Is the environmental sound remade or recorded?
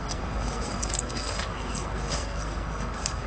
remade